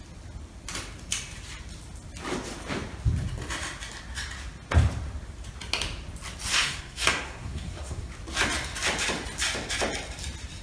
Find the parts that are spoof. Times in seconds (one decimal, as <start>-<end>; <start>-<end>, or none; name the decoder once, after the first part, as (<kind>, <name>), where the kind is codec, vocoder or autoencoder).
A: 6.5-8.1 (codec, SNAC)